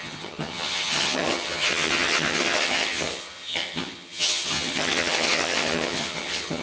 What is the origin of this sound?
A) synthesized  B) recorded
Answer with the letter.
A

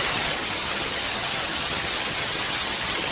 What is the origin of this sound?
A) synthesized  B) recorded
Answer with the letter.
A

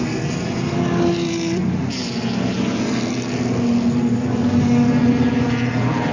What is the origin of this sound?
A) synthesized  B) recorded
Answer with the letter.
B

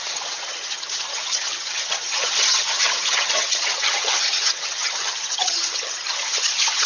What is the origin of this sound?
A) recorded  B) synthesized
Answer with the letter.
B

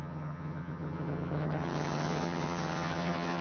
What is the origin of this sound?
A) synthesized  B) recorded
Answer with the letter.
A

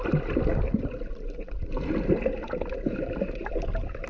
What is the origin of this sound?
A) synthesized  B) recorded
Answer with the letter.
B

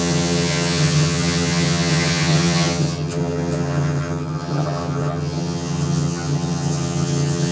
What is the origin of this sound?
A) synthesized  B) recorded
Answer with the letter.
A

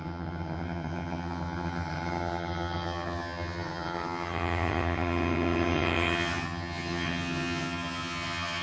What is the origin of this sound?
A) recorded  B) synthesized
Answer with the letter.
B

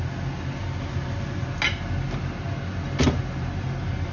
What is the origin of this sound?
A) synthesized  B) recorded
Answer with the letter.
B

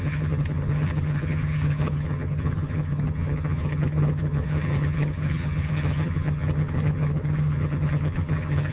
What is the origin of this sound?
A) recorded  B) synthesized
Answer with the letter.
B